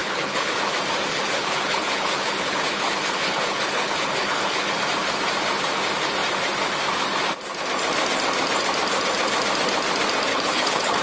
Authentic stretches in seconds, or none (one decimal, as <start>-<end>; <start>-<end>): 0.6-1.1; 4.7-10.3